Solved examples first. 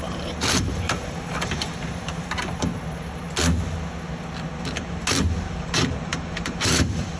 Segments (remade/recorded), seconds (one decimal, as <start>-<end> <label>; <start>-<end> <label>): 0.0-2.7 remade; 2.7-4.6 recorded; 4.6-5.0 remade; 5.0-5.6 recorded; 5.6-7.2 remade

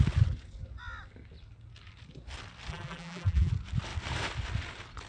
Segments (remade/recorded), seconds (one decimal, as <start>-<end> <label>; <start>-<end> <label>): 0.0-2.7 recorded; 2.7-3.5 remade; 3.5-5.1 recorded

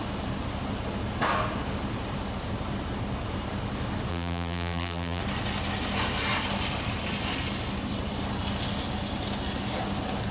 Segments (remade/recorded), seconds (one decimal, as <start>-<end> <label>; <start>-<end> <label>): 0.0-4.1 recorded; 4.1-5.2 remade; 5.2-10.3 recorded

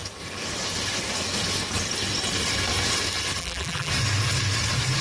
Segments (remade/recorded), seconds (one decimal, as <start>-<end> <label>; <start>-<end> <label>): 0.0-3.4 recorded; 3.4-3.9 remade; 3.9-5.0 recorded

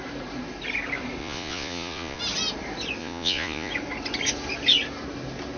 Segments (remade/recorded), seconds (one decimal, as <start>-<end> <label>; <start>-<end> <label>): 0.0-1.2 recorded; 1.2-2.2 remade; 2.2-3.0 recorded; 3.0-3.7 remade; 3.7-5.6 recorded